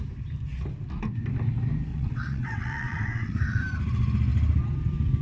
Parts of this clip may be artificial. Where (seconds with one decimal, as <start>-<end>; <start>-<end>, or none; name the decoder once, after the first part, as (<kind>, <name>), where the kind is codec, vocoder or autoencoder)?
1.9-3.6 (vocoder, WaveNeXt)